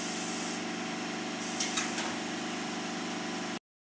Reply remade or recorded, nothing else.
recorded